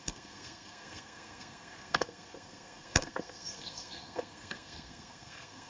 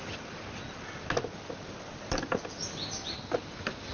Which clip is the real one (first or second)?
second